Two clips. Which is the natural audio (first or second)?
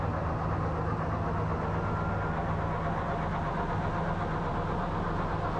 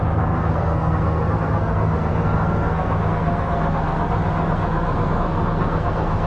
first